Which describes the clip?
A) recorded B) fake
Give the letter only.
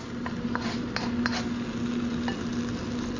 A